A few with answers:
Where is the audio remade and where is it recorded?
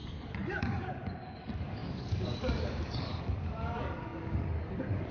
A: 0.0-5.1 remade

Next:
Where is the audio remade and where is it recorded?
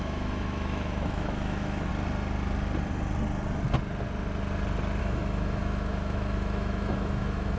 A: 0.0-1.9 remade; 1.9-5.0 recorded; 5.0-7.6 remade